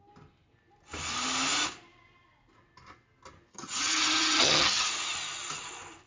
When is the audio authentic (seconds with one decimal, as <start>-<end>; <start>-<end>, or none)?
0.0-3.5; 4.9-6.1